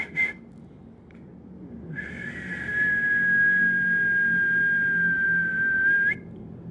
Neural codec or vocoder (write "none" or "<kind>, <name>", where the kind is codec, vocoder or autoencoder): none